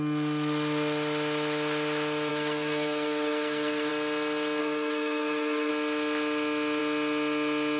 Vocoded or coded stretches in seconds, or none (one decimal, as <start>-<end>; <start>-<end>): 2.3-3.9; 4.6-5.7